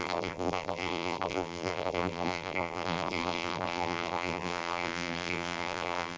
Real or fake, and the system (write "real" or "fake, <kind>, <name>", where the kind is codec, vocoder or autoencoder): fake, vocoder, BigVGAN v2